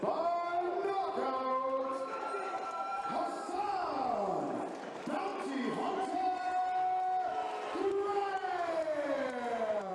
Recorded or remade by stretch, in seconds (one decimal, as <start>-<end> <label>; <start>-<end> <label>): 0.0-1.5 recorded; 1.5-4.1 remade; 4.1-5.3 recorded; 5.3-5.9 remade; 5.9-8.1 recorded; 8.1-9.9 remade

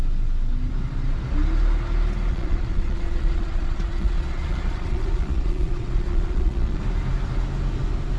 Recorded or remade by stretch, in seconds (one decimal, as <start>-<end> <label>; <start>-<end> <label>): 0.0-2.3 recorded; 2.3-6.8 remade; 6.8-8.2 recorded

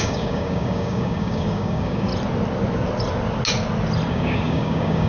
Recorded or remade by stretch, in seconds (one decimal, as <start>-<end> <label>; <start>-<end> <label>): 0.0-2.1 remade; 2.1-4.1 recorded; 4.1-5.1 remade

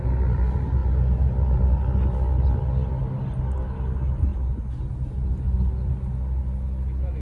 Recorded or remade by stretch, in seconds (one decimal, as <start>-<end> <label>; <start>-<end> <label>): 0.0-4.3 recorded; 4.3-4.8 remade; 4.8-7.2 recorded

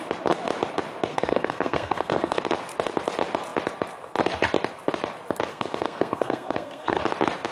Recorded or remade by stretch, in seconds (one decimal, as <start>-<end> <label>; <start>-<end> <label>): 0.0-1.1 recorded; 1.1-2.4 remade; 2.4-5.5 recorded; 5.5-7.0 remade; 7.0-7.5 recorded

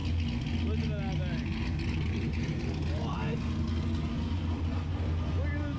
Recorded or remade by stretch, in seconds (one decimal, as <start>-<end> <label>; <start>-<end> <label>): 0.0-1.5 recorded; 1.5-2.6 remade; 2.6-5.8 recorded

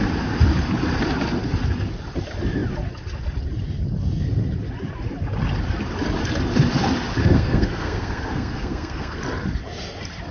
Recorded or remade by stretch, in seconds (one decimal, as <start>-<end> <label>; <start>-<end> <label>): 0.0-7.2 recorded; 7.2-9.2 remade; 9.2-10.3 recorded

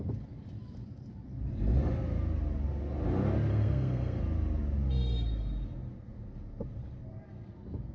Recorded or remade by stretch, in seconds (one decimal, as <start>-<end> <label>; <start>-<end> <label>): 0.0-3.5 recorded; 3.5-4.2 remade; 4.2-7.9 recorded